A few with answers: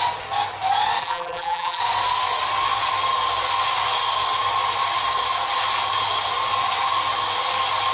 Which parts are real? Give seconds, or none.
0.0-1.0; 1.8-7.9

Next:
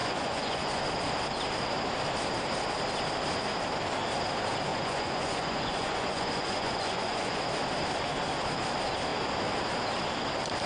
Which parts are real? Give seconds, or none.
0.8-4.7; 7.4-10.7